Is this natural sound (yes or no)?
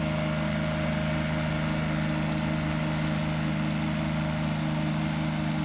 yes